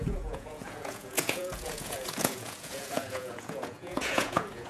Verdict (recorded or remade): remade